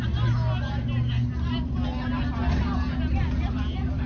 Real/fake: real